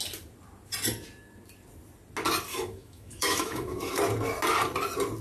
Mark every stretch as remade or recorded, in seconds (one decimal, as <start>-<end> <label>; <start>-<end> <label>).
0.0-2.5 recorded; 2.5-4.0 remade; 4.0-5.2 recorded